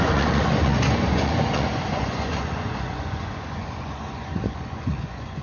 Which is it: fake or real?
fake